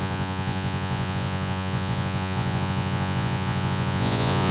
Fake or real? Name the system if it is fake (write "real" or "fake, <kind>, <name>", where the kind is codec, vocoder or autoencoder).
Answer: fake, vocoder, Vocos